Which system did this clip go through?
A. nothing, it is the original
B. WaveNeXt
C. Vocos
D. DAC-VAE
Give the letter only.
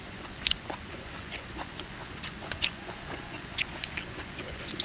C